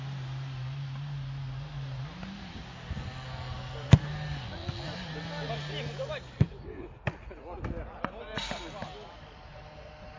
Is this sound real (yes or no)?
yes